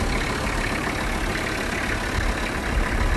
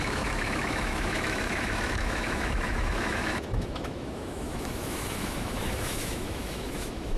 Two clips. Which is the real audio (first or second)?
first